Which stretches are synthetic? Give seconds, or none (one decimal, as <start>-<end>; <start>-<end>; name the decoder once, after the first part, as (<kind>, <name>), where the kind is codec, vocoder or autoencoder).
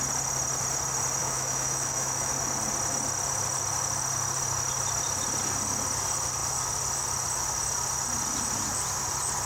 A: 1.2-2.3 (autoencoder, DAC-VAE)